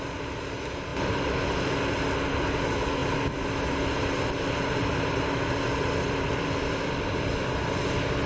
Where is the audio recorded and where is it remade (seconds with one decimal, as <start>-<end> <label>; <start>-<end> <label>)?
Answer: 0.0-8.3 recorded